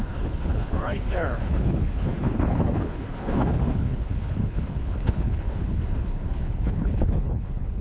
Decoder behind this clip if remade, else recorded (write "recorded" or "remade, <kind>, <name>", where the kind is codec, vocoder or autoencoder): remade, codec, HILCodec